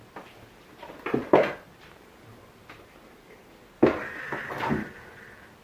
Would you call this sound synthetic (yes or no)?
no